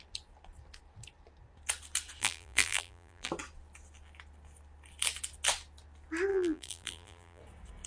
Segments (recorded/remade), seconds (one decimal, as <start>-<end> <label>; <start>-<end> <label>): 0.0-2.2 recorded; 2.2-3.3 remade; 3.3-6.3 recorded; 6.3-7.4 remade; 7.4-7.9 recorded